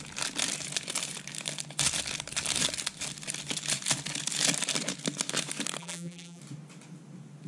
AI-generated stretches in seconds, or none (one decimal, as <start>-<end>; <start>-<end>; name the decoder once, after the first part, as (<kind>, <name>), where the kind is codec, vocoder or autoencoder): 5.8-6.4 (vocoder, BigVGAN v2)